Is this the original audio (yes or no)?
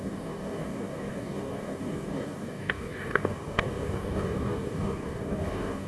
no